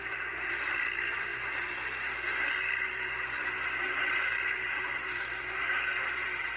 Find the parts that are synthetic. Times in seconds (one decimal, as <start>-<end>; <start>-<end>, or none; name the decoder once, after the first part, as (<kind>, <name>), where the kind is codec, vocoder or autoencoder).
0.0-6.6 (vocoder, BigVGAN v2)